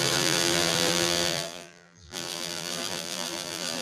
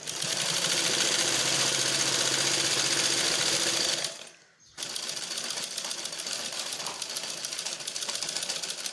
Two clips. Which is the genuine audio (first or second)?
second